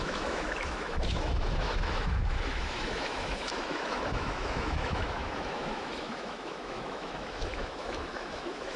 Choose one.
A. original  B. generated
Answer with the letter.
B